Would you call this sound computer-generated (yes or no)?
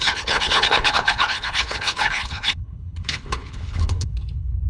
yes